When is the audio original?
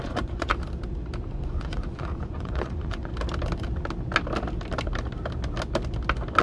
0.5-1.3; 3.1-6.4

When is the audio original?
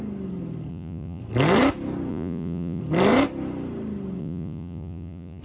0.0-0.7; 1.2-2.1; 2.8-4.2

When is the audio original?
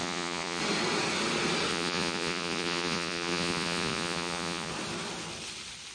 0.6-1.7; 4.7-5.9